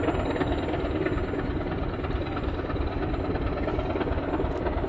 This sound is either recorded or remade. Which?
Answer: recorded